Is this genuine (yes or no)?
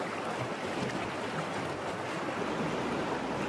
yes